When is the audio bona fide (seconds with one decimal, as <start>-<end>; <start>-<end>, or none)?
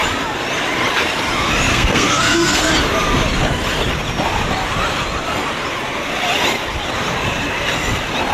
0.0-1.7; 2.7-8.3